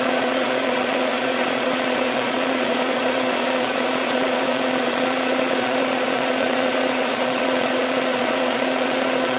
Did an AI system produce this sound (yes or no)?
yes